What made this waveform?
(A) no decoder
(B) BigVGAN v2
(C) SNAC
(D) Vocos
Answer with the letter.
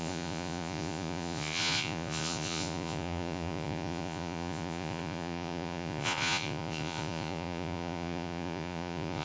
D